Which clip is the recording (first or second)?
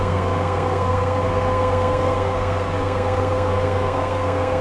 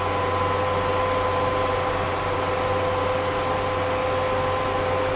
second